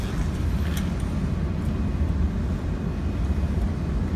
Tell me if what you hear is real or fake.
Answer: real